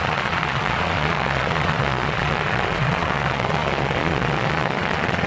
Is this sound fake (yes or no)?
yes